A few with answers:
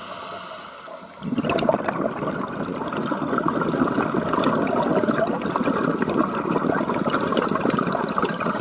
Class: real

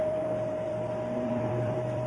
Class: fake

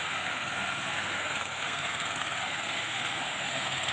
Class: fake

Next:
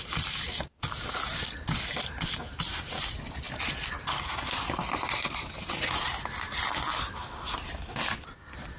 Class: real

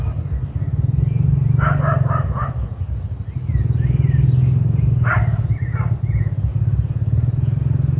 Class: real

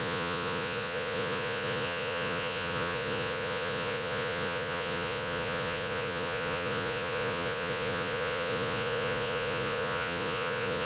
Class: fake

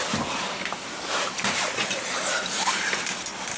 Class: real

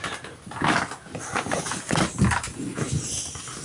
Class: real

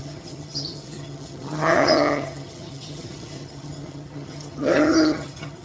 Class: fake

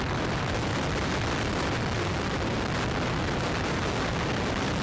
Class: fake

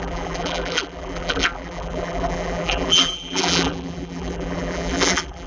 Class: fake